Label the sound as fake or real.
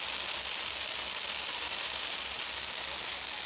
real